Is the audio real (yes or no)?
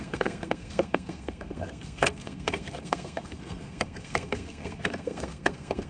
no